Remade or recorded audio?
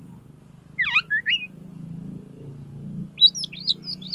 recorded